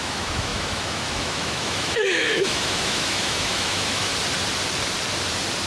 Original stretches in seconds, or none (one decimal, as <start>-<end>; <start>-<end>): 4.1-5.7